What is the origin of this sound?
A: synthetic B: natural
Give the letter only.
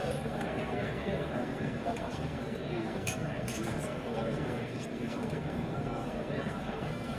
A